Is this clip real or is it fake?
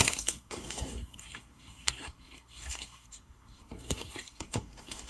fake